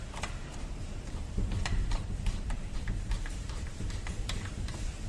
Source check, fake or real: fake